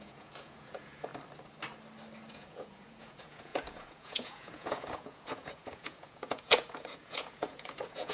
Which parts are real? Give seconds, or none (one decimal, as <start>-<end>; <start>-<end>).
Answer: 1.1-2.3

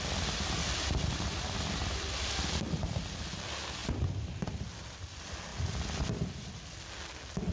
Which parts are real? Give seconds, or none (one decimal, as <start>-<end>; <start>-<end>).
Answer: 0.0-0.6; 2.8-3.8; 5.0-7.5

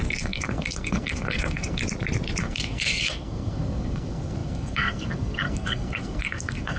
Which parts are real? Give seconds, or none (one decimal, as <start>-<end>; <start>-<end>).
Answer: 1.8-2.4